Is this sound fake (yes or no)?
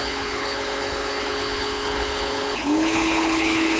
yes